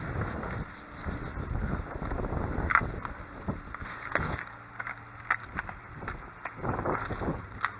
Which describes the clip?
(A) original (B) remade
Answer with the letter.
A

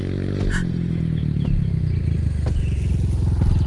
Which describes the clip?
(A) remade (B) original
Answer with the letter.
B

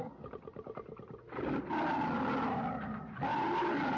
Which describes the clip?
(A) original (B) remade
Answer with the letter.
A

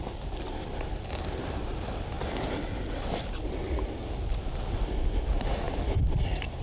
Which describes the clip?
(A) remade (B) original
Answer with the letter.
B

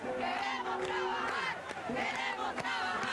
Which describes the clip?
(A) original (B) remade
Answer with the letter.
A